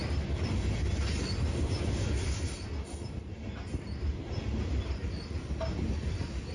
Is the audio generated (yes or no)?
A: no